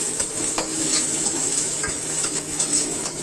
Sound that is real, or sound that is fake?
fake